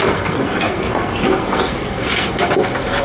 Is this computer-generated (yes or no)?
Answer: yes